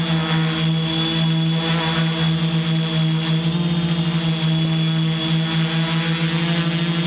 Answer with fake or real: real